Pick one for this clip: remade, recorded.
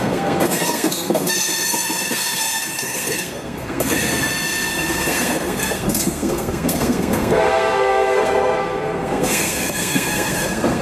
remade